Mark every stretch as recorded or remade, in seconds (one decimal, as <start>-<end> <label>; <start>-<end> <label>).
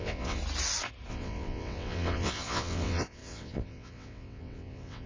0.0-0.4 remade; 0.4-1.1 recorded; 1.1-5.1 remade